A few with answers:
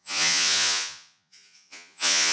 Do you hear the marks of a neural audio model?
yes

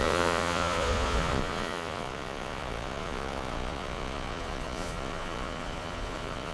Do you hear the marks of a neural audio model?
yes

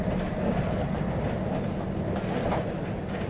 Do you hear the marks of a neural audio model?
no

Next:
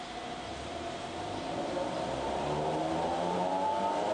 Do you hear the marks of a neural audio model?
no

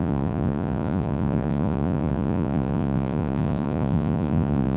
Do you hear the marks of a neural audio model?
yes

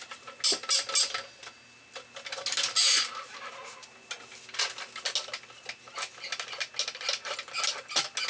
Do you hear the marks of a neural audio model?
no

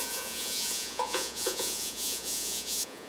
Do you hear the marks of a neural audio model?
yes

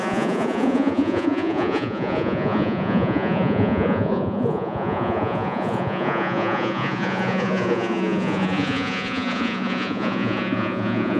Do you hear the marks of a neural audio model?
yes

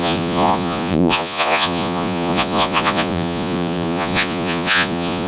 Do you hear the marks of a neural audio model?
yes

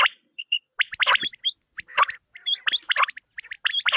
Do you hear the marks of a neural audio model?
no